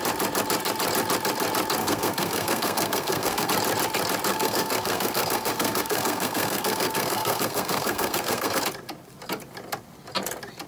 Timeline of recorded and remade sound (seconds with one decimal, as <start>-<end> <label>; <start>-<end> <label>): 0.0-1.8 recorded; 1.8-3.5 remade; 3.5-4.3 recorded; 4.3-8.6 remade; 8.6-10.7 recorded